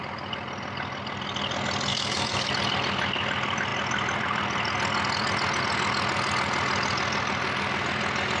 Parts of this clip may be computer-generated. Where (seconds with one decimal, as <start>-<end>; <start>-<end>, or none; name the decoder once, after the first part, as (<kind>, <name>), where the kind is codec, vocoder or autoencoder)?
1.9-2.5 (autoencoder, DAC-VAE)

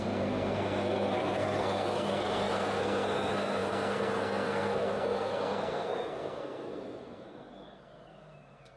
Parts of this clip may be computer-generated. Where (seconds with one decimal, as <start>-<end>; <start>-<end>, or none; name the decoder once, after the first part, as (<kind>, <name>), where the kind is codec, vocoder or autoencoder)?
0.0-8.8 (codec, SNAC)